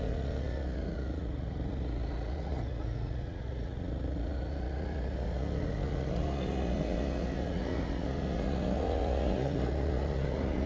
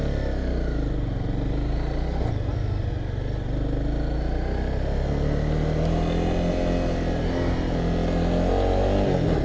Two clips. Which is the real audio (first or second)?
second